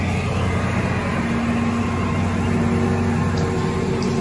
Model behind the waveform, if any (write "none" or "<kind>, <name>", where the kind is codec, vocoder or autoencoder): none